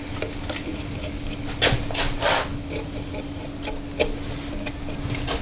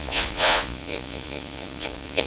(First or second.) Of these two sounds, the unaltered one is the first